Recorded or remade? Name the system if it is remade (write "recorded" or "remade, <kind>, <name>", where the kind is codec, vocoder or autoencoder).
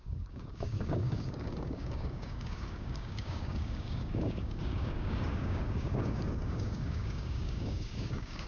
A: remade, codec, DAC